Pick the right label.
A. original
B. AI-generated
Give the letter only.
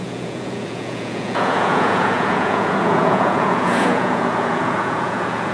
B